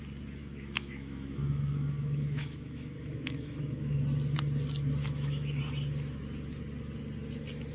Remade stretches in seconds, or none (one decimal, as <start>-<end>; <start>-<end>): 0.4-4.0; 5.0-5.6